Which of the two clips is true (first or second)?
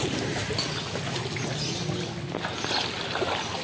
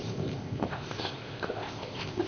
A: first